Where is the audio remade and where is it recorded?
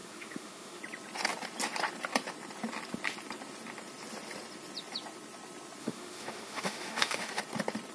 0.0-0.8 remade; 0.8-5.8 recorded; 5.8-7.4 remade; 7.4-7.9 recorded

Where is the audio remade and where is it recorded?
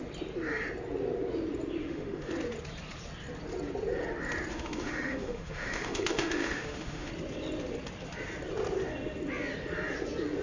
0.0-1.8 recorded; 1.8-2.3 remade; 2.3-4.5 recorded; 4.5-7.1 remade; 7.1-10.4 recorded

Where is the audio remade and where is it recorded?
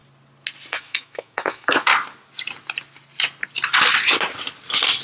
0.0-0.7 recorded; 0.7-1.9 remade; 1.9-5.0 recorded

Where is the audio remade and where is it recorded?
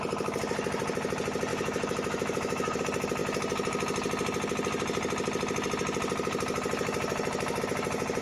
0.0-1.5 recorded; 1.5-2.8 remade; 2.8-8.2 recorded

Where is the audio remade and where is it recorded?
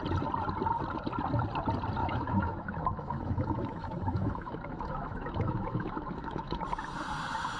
0.0-2.0 recorded; 2.0-6.6 remade; 6.6-7.6 recorded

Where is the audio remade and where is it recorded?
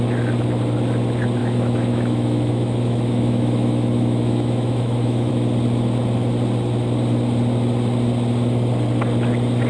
0.0-1.4 recorded; 1.4-5.3 remade; 5.3-9.7 recorded